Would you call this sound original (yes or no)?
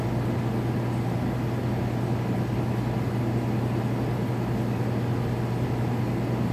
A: yes